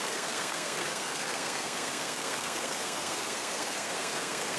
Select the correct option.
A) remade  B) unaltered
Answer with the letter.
A